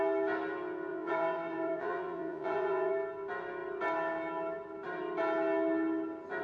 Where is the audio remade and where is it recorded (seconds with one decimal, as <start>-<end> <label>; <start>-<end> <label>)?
0.0-0.9 recorded; 0.9-2.9 remade; 2.9-6.4 recorded